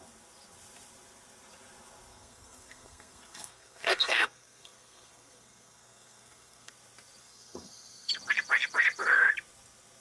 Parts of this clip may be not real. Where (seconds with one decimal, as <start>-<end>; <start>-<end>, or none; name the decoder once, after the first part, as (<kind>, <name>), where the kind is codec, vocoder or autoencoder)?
2.1-6.7 (codec, SNAC); 7.2-8.1

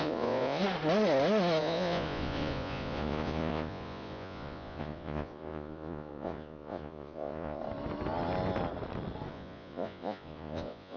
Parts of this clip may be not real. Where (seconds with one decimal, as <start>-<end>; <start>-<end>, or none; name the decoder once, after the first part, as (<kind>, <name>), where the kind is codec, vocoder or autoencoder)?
0.0-0.6 (vocoder, Vocos); 1.6-7.6; 9.3-11.0

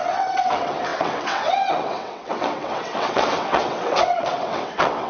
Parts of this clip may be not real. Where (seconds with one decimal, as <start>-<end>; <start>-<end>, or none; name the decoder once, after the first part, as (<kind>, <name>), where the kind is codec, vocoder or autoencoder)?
0.0-5.1 (vocoder, WaveNeXt)

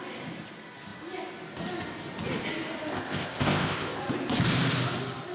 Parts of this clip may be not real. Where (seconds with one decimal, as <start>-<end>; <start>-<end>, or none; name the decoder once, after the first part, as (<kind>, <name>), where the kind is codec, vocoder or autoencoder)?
2.9-4.0 (codec, ZipCodec)

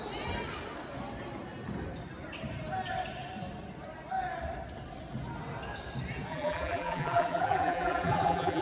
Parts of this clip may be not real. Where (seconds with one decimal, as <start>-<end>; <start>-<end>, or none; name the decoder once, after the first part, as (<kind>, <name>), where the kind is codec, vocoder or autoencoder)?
6.3-8.6 (vocoder, BigVGAN v2)

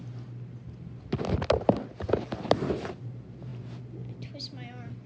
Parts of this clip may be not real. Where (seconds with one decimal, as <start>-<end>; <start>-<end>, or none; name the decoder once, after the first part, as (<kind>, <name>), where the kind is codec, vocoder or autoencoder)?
none

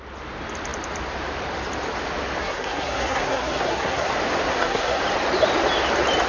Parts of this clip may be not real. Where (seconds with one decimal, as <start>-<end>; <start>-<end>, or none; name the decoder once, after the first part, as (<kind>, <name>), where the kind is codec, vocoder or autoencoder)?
2.4-4.1 (codec, SNAC); 4.5-5.0